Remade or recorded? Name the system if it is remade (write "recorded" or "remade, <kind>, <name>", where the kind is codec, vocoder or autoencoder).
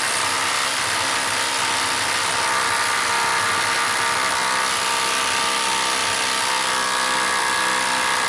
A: recorded